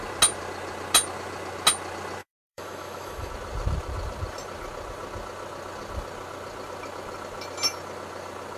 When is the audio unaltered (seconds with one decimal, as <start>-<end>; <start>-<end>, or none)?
0.0-2.2; 3.3-8.6